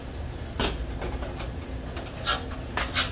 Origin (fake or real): real